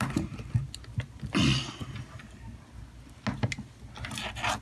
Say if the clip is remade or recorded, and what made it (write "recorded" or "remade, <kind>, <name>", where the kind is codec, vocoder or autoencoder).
recorded